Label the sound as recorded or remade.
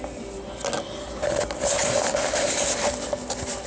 recorded